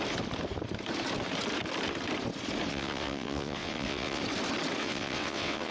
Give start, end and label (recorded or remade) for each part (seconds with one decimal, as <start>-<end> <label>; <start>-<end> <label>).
0.0-2.7 recorded; 2.7-4.2 remade; 4.2-4.8 recorded; 4.8-5.7 remade